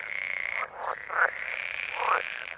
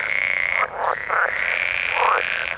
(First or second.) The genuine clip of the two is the second